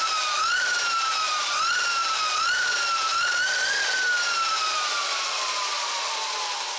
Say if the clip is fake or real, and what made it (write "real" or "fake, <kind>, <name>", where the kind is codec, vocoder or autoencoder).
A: fake, vocoder, BigVGAN v2